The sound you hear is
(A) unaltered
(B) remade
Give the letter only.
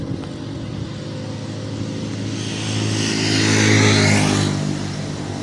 A